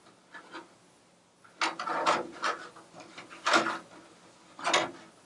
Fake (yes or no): no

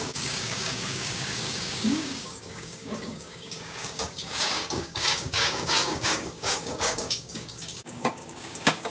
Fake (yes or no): yes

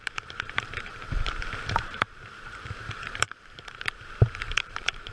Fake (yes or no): yes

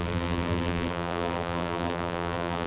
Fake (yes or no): yes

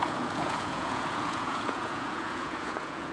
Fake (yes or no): yes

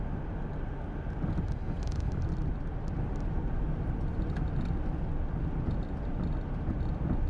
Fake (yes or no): no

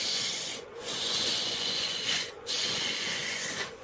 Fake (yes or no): yes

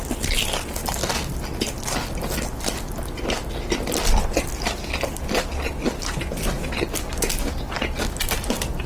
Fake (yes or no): no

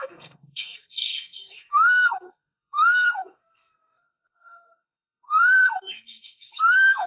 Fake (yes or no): yes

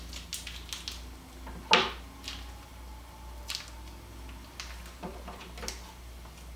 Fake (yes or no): no